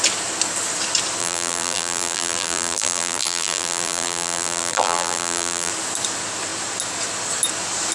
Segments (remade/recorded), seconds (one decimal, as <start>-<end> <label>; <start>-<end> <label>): 0.0-1.2 recorded; 1.2-5.7 remade; 5.7-7.9 recorded